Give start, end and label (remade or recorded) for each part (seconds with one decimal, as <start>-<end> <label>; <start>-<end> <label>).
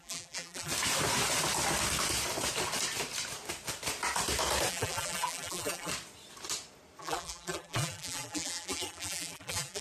0.0-0.7 remade; 0.7-4.7 recorded; 4.7-5.9 remade; 5.9-7.0 recorded; 7.0-9.8 remade